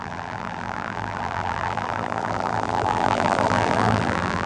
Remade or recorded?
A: remade